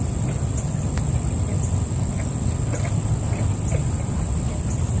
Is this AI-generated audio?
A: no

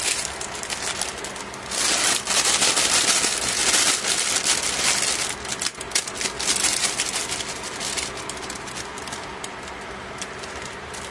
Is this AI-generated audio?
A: no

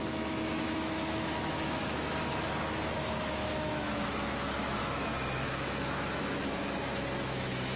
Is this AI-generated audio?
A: yes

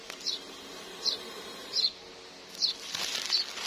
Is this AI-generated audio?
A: no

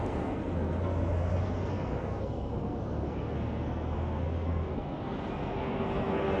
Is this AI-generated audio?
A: yes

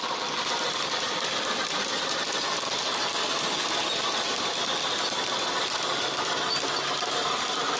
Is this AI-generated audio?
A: no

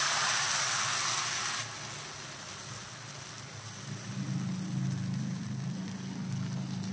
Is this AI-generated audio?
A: no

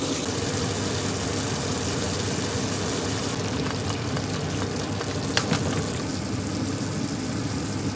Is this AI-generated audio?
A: no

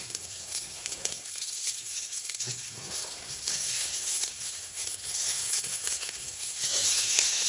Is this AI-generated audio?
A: yes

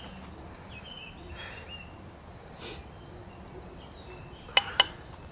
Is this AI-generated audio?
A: no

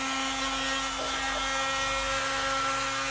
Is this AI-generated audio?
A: no